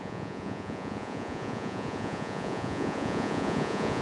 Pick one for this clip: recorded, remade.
remade